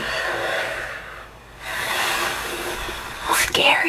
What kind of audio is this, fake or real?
fake